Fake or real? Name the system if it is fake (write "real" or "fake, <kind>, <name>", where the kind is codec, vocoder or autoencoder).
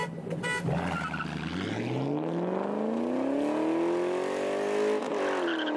real